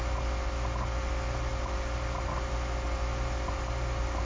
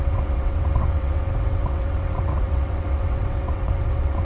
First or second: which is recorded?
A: first